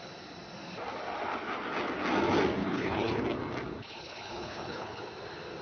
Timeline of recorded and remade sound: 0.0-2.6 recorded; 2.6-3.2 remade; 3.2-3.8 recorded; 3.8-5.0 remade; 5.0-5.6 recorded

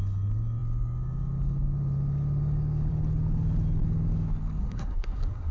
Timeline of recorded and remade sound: 0.0-4.6 recorded; 4.6-5.5 remade

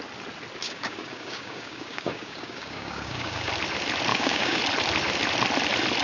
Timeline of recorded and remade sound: 0.0-0.6 recorded; 0.6-3.5 remade; 3.5-4.1 recorded; 4.1-4.6 remade; 4.6-6.0 recorded

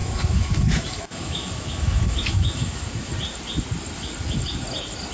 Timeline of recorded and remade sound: 0.0-3.1 remade; 3.1-5.1 recorded

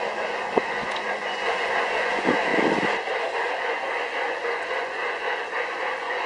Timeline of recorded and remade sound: 0.0-2.5 remade; 2.5-3.3 recorded; 3.3-6.3 remade